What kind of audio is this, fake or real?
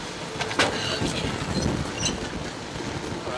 real